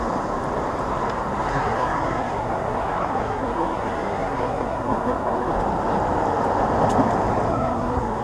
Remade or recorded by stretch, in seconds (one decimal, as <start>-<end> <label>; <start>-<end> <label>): 0.0-1.5 recorded; 1.5-5.5 remade; 5.5-7.5 recorded; 7.5-8.2 remade